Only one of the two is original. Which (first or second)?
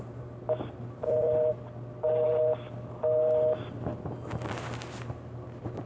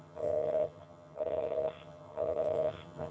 first